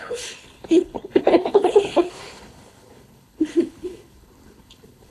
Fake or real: fake